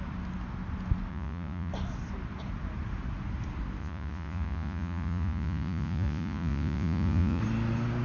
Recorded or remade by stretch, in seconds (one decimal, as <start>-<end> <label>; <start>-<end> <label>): 0.0-1.1 recorded; 1.1-1.7 remade; 1.7-3.8 recorded; 3.8-7.4 remade; 7.4-8.0 recorded